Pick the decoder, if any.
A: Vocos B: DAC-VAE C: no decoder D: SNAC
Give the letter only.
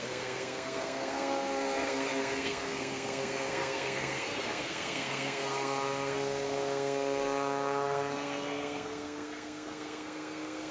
D